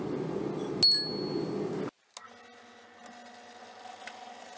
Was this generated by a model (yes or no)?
no